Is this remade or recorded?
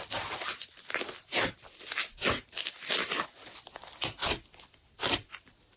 recorded